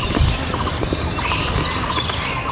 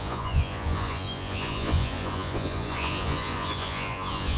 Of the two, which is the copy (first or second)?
second